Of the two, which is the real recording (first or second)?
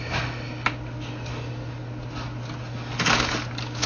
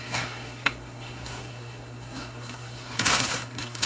first